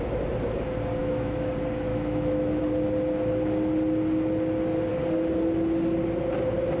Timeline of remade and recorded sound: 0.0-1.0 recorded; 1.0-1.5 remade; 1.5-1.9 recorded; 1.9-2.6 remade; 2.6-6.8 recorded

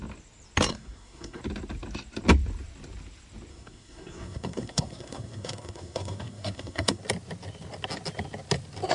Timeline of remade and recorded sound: 0.0-0.7 recorded; 0.7-1.4 remade; 1.4-3.5 recorded; 3.5-7.0 remade; 7.0-8.9 recorded

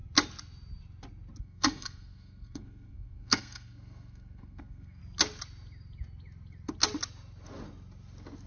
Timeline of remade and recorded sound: 0.0-1.4 recorded; 1.4-5.0 remade; 5.0-8.5 recorded

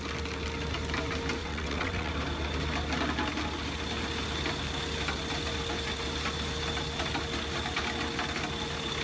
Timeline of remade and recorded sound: 0.0-1.4 recorded; 1.4-2.1 remade; 2.1-9.0 recorded